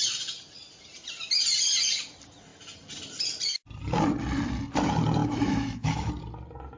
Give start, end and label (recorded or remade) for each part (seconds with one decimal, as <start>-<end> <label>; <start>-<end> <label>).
0.0-5.2 recorded; 5.2-6.1 remade; 6.1-6.8 recorded